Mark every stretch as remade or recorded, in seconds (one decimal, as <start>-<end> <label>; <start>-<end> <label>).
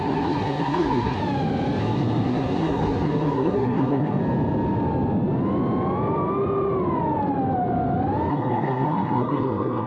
0.0-1.2 remade; 1.2-1.8 recorded; 1.8-4.2 remade; 4.2-8.3 recorded; 8.3-9.9 remade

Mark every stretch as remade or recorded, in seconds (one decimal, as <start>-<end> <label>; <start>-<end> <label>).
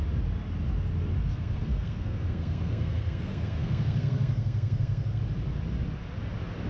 0.0-1.2 recorded; 1.2-5.2 remade; 5.2-6.7 recorded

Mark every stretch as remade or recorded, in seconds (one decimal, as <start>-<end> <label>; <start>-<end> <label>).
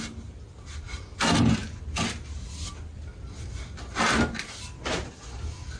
0.0-5.8 recorded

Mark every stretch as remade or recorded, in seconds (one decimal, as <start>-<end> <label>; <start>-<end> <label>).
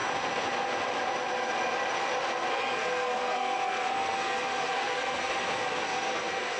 0.0-2.5 recorded; 2.5-6.6 remade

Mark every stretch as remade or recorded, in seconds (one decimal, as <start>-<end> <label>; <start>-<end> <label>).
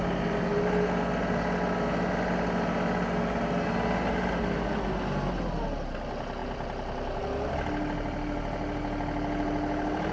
0.0-10.1 recorded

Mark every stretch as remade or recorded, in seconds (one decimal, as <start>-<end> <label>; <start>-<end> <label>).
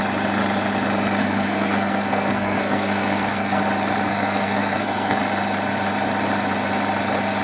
0.0-1.2 recorded; 1.2-3.6 remade; 3.6-4.1 recorded; 4.1-5.2 remade; 5.2-7.4 recorded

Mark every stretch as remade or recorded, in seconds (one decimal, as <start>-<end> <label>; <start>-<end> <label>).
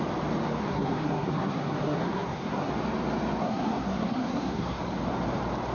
0.0-0.6 recorded; 0.6-2.7 remade; 2.7-3.4 recorded; 3.4-4.8 remade; 4.8-5.7 recorded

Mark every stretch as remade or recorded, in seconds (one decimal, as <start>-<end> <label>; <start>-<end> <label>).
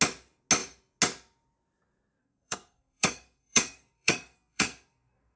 0.0-2.2 recorded; 2.2-5.4 remade